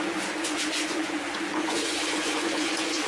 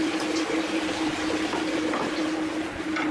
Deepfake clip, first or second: first